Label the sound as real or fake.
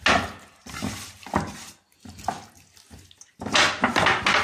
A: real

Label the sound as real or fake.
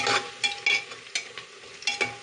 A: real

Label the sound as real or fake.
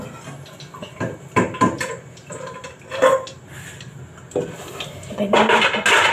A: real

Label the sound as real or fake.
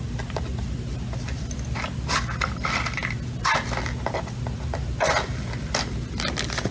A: real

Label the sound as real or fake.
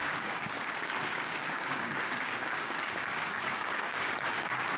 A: fake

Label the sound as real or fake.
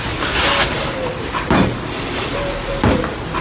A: real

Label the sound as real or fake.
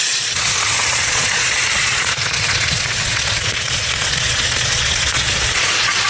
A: fake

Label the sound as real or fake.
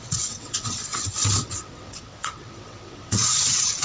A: fake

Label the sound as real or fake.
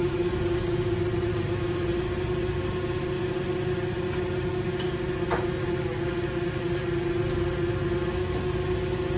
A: real